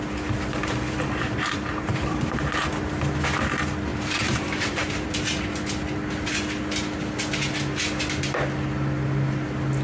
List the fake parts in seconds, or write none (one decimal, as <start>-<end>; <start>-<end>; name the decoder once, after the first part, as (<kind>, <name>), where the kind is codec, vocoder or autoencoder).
0.6-2.7 (vocoder, BigVGAN v2); 3.9-5.4